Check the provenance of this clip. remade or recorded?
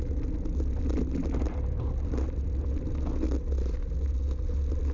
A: recorded